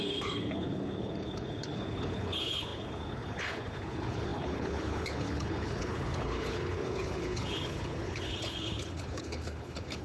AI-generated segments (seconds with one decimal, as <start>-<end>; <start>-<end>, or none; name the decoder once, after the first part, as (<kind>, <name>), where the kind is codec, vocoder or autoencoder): 0.0-10.0 (codec, HILCodec)